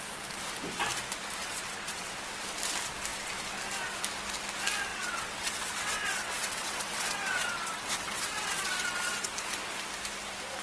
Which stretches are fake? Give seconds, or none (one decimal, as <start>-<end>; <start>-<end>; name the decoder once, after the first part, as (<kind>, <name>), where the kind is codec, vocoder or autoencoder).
1.4-2.1 (vocoder, WaveNeXt); 4.9-9.3